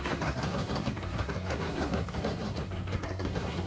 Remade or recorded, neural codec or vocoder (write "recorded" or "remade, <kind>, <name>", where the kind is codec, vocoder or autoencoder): remade, codec, SNAC